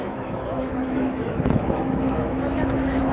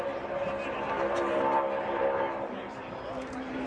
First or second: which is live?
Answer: second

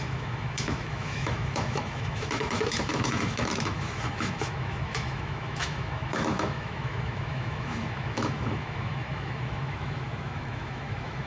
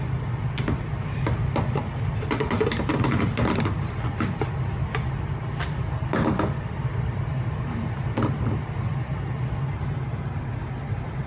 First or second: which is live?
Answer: second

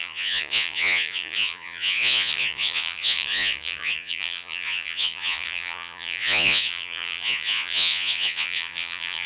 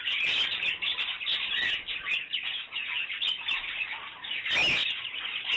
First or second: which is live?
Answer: second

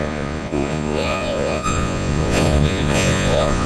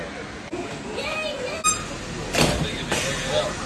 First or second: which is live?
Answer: second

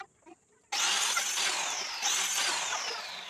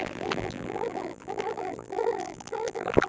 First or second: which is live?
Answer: first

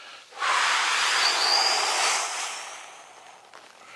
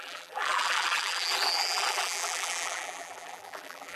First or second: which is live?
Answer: first